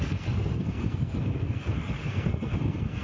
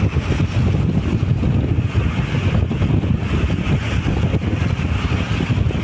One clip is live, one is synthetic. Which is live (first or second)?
second